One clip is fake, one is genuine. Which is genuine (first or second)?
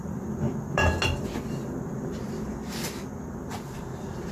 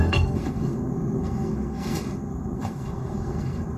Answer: first